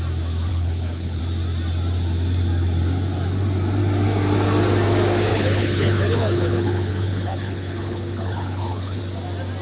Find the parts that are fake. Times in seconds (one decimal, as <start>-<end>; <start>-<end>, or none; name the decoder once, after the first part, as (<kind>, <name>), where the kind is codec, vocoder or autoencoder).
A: 0.5-1.2 (codec, HILCodec); 5.3-9.0